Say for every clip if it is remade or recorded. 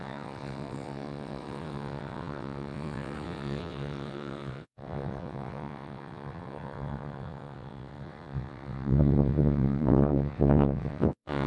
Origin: remade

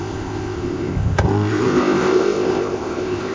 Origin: remade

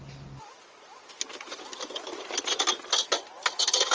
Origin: recorded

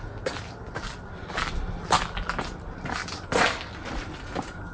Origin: recorded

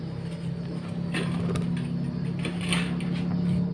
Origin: recorded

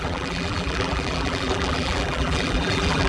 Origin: remade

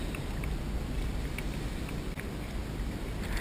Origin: recorded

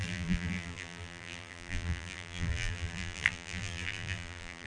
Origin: remade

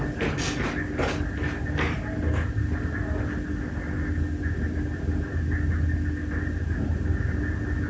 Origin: recorded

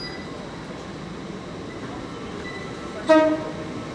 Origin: recorded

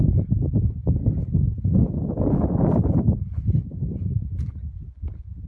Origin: recorded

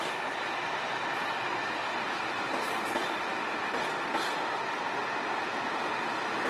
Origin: recorded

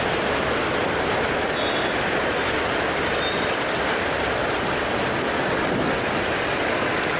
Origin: recorded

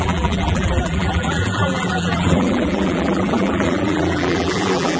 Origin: remade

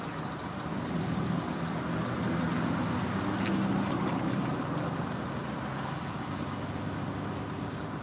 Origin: recorded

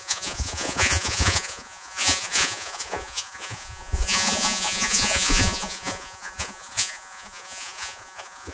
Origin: remade